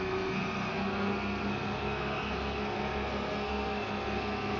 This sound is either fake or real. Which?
fake